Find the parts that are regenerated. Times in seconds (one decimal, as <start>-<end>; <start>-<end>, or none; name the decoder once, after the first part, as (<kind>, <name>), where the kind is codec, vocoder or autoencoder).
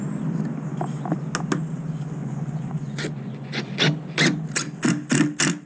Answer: 2.2-3.7 (vocoder, Vocos)